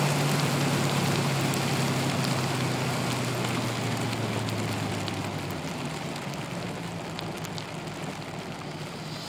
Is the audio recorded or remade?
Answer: recorded